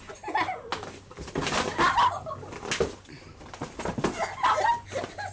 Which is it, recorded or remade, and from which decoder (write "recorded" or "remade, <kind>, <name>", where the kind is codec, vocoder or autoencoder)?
recorded